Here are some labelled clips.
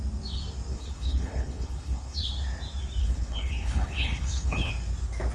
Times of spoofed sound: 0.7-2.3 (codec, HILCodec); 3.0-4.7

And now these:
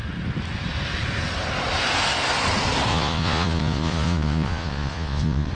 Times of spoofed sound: 2.9-5.5 (vocoder, Vocos)

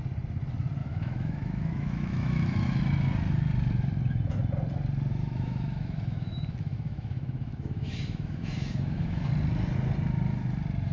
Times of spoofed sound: 0.8-2.8 (autoencoder, DAC-VAE); 5.1-9.3

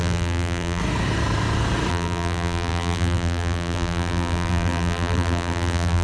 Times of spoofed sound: 0.0-0.8 (vocoder, BigVGAN v2); 1.9-6.0

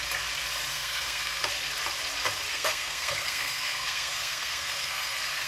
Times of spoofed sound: 0.7-1.5 (codec, SNAC); 2.5-5.5